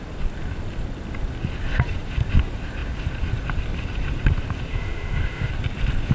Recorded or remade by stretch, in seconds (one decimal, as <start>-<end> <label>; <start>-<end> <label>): 0.0-4.7 recorded; 4.7-5.5 remade; 5.5-6.1 recorded